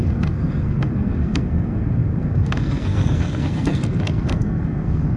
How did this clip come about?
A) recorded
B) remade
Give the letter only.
B